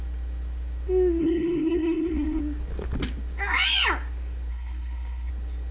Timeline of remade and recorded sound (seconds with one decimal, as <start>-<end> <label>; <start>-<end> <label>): 0.0-1.2 recorded; 1.2-2.4 remade; 2.4-4.5 recorded; 4.5-5.3 remade; 5.3-5.7 recorded